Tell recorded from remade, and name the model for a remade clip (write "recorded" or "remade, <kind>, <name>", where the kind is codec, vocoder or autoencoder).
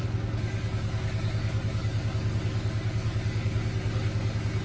remade, codec, DAC